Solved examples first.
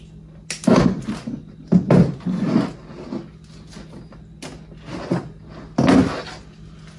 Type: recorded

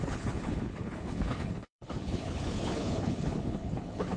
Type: remade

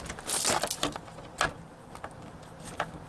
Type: recorded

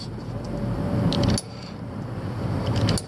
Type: recorded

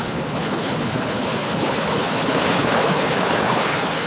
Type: remade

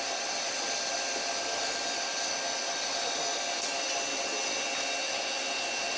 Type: recorded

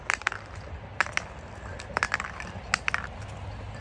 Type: recorded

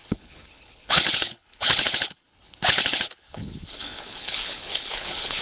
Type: remade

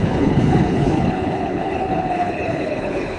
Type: remade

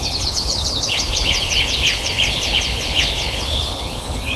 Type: remade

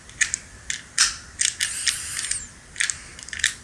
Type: recorded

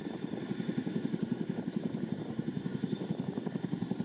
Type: recorded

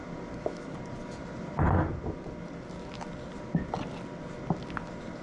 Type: recorded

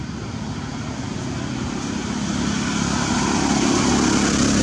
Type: recorded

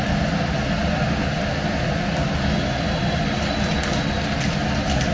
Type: recorded